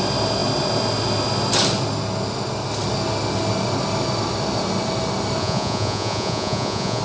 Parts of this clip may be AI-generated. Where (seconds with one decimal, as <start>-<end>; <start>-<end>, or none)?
5.4-7.0